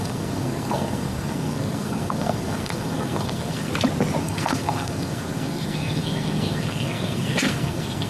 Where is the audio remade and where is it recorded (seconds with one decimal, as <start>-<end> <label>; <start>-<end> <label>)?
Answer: 0.0-3.7 remade; 3.7-4.2 recorded; 4.2-8.1 remade